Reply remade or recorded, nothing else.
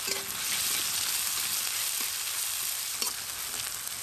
recorded